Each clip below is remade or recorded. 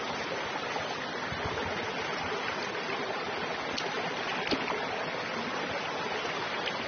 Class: recorded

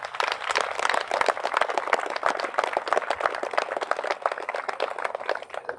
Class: recorded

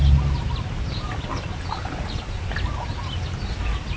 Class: recorded